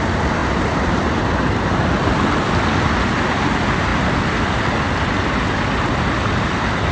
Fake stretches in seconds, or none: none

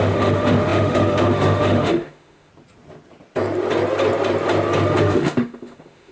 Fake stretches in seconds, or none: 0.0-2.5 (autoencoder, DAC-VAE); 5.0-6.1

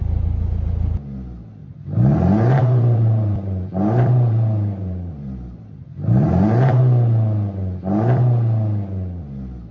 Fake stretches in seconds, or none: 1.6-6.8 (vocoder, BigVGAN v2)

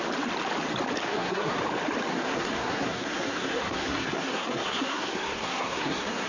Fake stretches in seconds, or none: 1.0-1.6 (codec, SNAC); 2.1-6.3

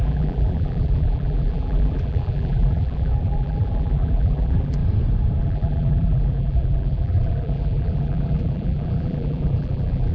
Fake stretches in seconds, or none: 0.0-4.8 (vocoder, BigVGAN v2); 5.4-10.1

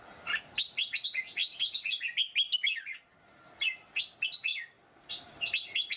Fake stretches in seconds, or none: none

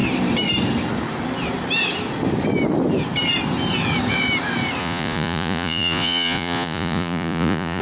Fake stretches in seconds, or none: 4.8-7.8 (vocoder, Vocos)